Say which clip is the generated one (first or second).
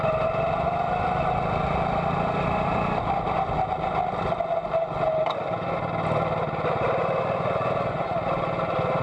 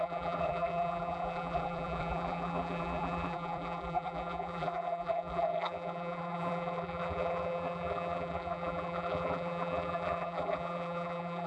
second